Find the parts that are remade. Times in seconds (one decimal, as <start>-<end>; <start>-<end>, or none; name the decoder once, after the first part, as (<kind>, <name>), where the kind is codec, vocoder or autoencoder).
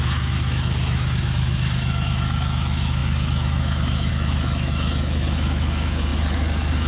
0.0-6.9 (autoencoder, DAC-VAE)